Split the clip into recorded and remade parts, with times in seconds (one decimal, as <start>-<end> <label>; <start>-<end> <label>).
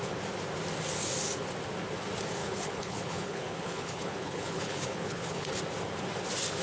0.0-2.4 recorded; 2.4-5.6 remade; 5.6-6.6 recorded